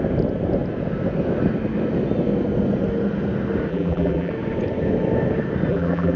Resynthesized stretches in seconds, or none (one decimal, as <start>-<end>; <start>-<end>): 3.7-4.3; 5.7-6.2